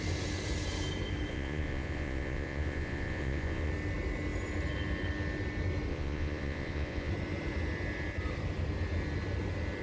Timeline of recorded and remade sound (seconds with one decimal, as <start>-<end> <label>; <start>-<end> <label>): 0.0-1.3 recorded; 1.3-3.7 remade; 3.7-5.9 recorded; 5.9-7.1 remade; 7.1-9.8 recorded